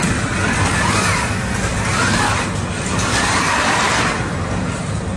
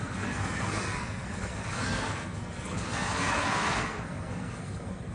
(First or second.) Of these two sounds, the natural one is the first